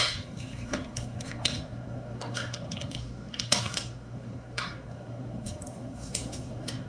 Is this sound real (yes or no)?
no